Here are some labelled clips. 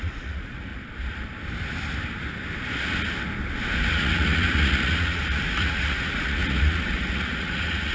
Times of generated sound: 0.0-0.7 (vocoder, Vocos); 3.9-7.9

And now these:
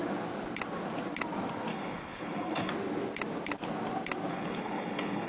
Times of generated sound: 1.7-2.7 (codec, HILCodec); 4.3-5.3

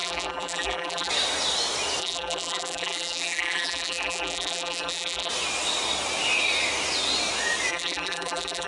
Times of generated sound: 0.0-1.1 (vocoder, BigVGAN v2); 2.0-5.3; 7.7-8.7

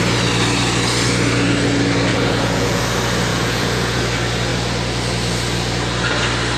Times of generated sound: 2.1-2.8 (vocoder, Vocos); 3.3-4.0